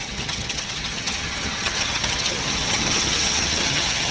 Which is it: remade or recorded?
remade